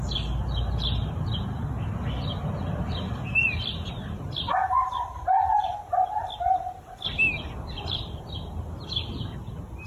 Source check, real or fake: real